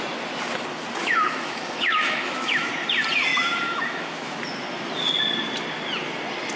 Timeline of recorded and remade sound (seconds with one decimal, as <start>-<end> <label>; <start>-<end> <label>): 0.0-1.0 recorded; 1.0-2.7 remade; 2.7-3.3 recorded; 3.3-4.4 remade; 4.4-6.6 recorded